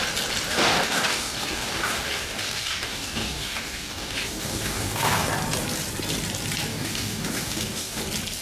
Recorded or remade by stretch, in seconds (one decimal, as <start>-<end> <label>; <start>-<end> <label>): 0.0-0.5 recorded; 0.5-5.3 remade; 5.3-6.7 recorded; 6.7-8.0 remade; 8.0-8.4 recorded